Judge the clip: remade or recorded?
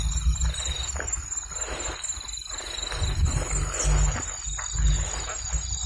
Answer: recorded